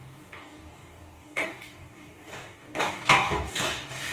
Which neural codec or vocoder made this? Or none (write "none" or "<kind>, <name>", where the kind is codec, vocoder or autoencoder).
codec, DAC